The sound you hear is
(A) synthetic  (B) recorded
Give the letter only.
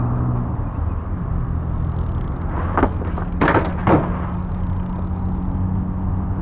B